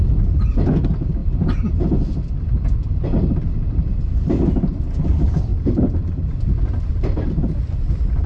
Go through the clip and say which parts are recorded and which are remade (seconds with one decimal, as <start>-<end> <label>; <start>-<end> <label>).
0.0-8.3 recorded